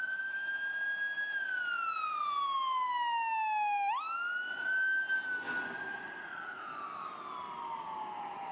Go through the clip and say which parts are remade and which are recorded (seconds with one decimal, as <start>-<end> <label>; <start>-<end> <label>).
0.0-5.9 recorded; 5.9-6.6 remade; 6.6-8.5 recorded